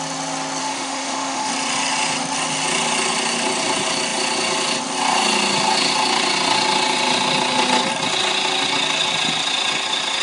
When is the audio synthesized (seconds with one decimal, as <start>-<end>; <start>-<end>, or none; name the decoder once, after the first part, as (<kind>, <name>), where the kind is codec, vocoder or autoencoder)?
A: 0.6-1.5 (autoencoder, DAC-VAE)

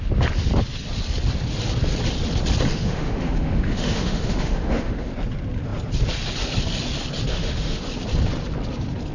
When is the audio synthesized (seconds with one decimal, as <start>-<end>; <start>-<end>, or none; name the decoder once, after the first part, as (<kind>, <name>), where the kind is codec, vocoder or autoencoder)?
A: 2.7-5.1 (autoencoder, DAC-VAE); 7.3-7.8

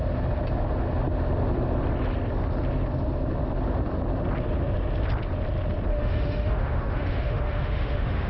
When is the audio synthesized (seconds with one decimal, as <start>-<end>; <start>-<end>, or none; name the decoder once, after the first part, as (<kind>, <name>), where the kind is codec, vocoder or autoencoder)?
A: 5.9-8.3 (autoencoder, DAC-VAE)

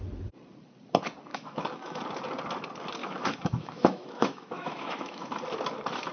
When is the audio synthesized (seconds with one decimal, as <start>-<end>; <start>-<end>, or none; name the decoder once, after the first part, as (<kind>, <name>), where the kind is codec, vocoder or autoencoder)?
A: 1.3-2.0 (autoencoder, DAC-VAE); 3.0-5.3

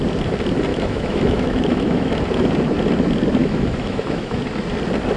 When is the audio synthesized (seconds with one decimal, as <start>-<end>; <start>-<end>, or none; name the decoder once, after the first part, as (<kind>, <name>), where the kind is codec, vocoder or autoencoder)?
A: 0.7-2.1 (autoencoder, DAC-VAE); 3.4-4.4

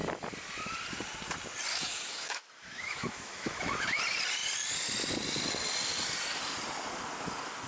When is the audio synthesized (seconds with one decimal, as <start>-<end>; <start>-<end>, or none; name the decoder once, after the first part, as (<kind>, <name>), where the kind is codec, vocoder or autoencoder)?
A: 1.7-4.0 (autoencoder, DAC-VAE)

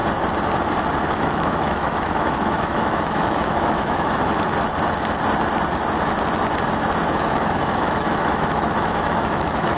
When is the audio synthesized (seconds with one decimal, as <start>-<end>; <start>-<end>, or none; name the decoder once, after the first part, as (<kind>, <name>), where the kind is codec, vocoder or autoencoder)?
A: 1.1-4.3 (autoencoder, DAC-VAE); 7.2-9.8